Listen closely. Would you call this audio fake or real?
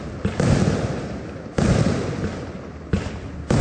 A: real